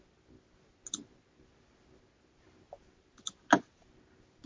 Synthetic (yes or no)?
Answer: no